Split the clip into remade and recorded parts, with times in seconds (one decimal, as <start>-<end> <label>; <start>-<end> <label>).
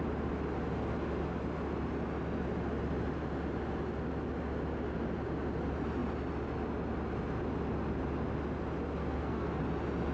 0.0-9.0 recorded; 9.0-9.6 remade; 9.6-10.1 recorded